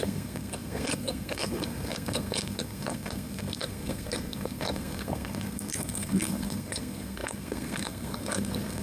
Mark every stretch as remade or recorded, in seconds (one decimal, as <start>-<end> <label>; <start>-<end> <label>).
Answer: 0.0-8.8 remade